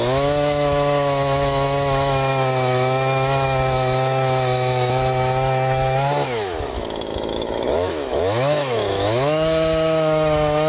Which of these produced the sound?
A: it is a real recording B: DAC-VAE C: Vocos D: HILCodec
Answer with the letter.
B